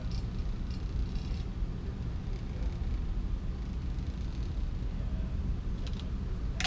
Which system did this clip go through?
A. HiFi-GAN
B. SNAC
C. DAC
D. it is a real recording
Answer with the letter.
D